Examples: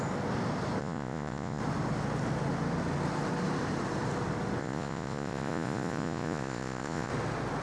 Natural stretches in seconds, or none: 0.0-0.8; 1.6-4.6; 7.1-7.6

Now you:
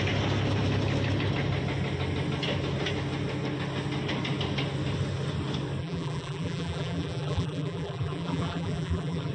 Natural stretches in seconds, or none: 0.0-5.8

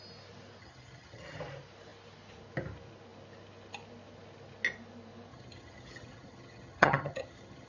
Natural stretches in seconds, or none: 0.0-0.6; 1.4-5.3

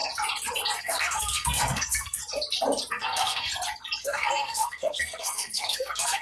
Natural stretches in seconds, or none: 0.0-0.8; 2.2-2.9; 3.5-4.0